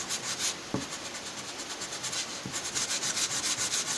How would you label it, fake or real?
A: real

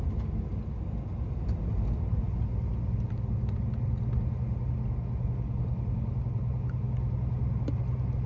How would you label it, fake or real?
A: real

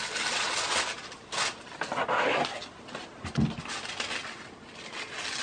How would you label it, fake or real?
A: real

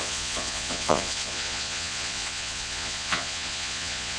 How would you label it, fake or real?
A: fake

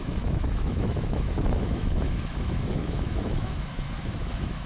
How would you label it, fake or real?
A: fake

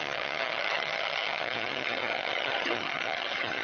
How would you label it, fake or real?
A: fake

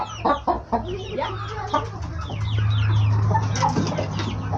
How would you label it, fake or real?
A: real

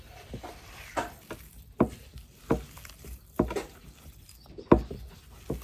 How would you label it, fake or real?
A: real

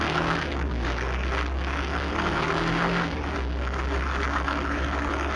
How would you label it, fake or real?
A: fake